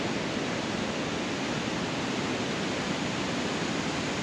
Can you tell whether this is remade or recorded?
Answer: recorded